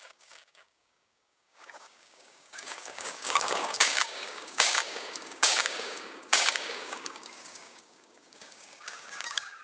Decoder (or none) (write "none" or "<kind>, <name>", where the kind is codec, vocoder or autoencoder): codec, DAC